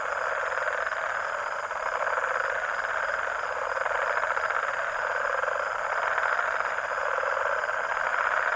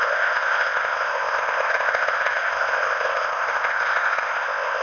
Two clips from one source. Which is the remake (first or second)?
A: second